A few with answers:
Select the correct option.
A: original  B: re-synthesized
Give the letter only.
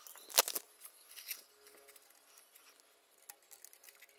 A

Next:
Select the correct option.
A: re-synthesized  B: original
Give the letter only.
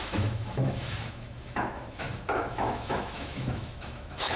A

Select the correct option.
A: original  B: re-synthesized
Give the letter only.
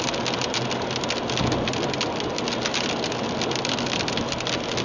A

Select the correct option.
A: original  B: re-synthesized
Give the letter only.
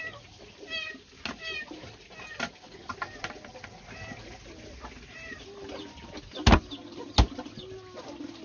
A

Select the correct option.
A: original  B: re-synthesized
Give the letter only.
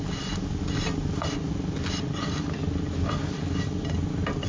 A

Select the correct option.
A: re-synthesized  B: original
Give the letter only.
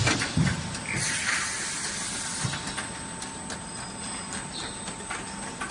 B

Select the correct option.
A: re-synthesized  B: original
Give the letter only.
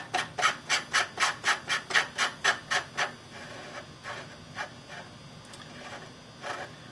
B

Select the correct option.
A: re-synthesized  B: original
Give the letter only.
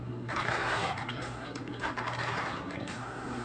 A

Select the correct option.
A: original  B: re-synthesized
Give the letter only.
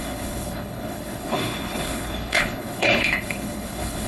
B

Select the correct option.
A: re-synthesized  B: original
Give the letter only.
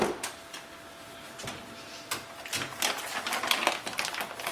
B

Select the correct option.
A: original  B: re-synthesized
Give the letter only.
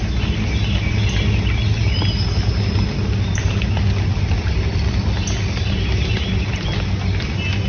A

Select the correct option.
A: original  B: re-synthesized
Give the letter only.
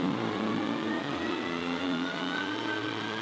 B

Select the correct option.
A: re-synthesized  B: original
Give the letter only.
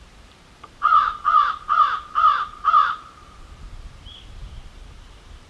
A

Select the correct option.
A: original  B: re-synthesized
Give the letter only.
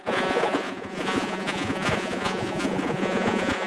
B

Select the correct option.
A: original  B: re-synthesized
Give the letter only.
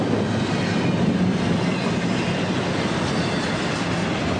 A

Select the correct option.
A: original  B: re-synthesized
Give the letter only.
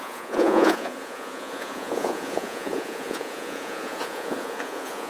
B